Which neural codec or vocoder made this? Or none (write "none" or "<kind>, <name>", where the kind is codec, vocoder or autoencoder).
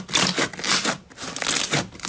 none